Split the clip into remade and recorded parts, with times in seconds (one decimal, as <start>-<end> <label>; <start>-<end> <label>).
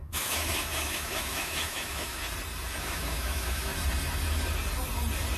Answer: 0.0-2.2 remade; 2.2-2.8 recorded; 2.8-3.7 remade; 3.7-5.4 recorded